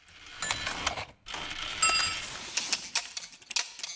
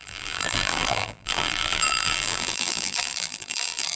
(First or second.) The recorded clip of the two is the first